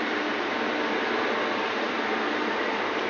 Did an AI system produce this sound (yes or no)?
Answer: no